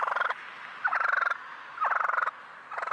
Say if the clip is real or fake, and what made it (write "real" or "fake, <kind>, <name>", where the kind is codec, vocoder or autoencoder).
real